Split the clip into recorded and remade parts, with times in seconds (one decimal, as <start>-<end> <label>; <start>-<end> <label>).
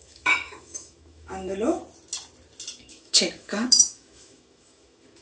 0.0-1.8 remade; 1.8-2.8 recorded; 2.8-5.2 remade